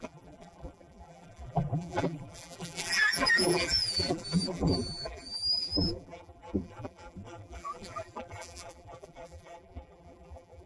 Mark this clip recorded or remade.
remade